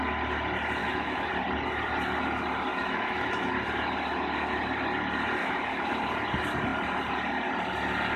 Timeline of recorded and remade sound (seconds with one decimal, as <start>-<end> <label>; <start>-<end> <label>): 0.0-0.8 recorded; 0.8-1.3 remade; 1.3-2.7 recorded; 2.7-3.5 remade; 3.5-5.4 recorded; 5.4-5.9 remade; 5.9-8.2 recorded